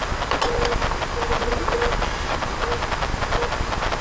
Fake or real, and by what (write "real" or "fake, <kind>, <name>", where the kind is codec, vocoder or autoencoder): real